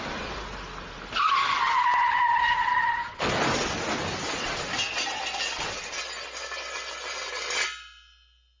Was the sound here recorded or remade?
recorded